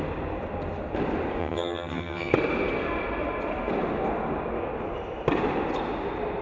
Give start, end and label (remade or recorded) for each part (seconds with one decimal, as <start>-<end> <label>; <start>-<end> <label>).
0.0-1.4 recorded; 1.4-2.3 remade; 2.3-6.4 recorded